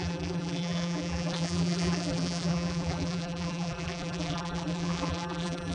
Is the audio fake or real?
fake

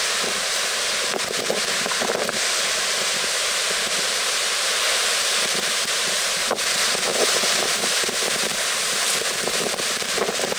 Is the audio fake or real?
fake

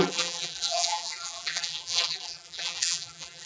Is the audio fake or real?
fake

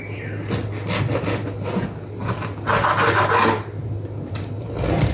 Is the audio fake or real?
real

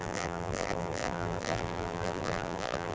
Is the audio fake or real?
fake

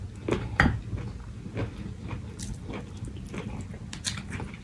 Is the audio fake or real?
real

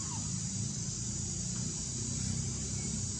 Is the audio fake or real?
real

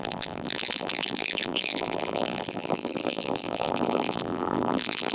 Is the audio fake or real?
fake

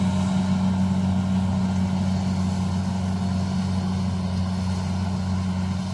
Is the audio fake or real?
real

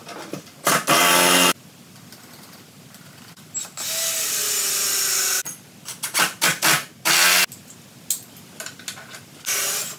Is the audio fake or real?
real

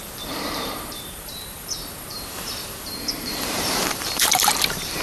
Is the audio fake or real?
fake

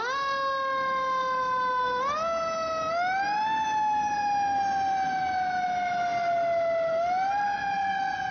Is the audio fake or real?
real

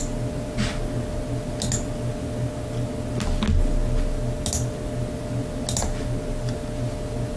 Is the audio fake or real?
real